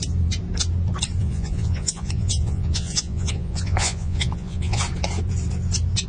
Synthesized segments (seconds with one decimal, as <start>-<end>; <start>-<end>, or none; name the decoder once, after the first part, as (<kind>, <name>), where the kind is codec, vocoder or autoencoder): 1.2-4.8 (vocoder, Vocos)